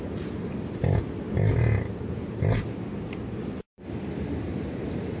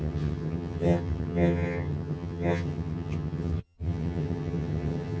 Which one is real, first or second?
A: first